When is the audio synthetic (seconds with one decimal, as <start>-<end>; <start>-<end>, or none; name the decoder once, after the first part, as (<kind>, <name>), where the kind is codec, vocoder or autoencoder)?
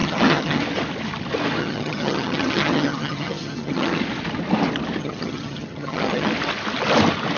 0.0-0.6 (vocoder, HiFi-GAN); 1.6-4.0; 5.0-6.3